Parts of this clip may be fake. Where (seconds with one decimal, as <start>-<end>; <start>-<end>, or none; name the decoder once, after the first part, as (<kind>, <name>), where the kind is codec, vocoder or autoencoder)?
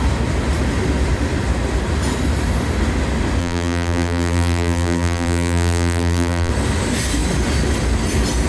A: 3.4-6.5 (vocoder, BigVGAN v2)